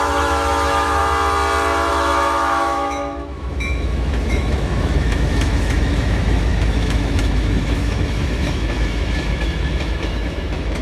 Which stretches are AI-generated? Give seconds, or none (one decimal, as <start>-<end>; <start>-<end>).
0.0-1.0; 1.9-10.8